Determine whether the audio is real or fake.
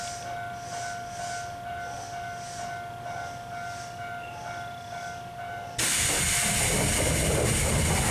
real